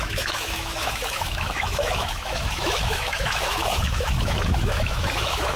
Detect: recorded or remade remade